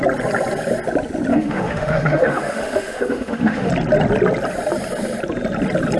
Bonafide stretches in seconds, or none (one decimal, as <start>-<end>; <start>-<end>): 0.0-1.3; 3.7-6.0